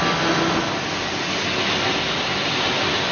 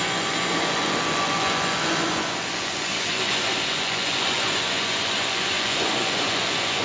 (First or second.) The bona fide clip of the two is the first